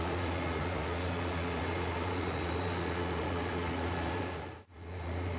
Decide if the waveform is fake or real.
fake